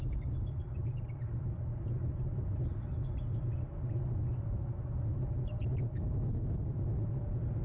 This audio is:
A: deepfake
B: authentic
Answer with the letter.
B